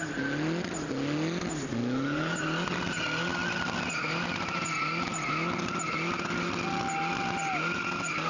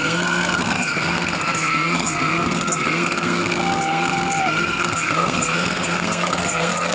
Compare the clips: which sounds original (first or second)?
first